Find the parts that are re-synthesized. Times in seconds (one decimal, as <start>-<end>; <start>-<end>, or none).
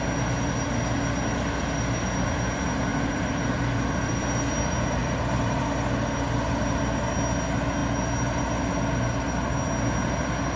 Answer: 2.9-4.2; 5.0-5.6